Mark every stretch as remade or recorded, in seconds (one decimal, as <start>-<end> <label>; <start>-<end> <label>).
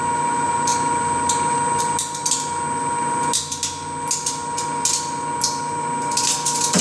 0.0-6.8 recorded